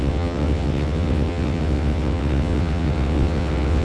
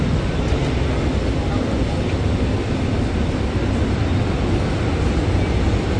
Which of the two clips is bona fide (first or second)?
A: second